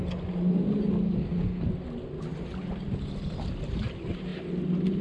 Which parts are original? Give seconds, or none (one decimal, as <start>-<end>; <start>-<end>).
0.0-5.0